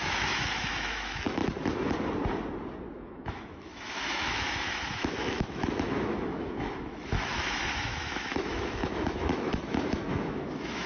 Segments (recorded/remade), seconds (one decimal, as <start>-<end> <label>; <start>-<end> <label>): 0.0-1.4 remade; 1.4-3.0 recorded; 3.0-10.9 remade